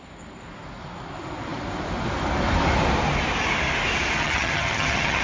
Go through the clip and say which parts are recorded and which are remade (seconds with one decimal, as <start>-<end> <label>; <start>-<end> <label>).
0.0-4.2 recorded; 4.2-5.2 remade